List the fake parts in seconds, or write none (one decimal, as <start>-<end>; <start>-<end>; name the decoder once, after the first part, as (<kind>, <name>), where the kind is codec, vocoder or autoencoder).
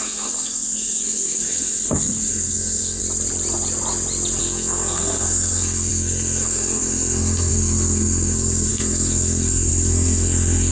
0.0-3.0 (codec, SNAC); 4.4-10.7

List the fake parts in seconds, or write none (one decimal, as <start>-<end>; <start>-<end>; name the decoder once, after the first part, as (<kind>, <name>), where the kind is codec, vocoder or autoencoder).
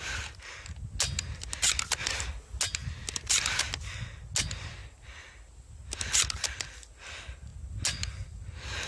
none